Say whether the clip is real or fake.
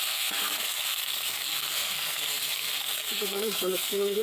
fake